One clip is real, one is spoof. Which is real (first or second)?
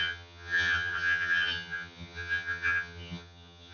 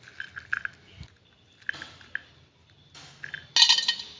second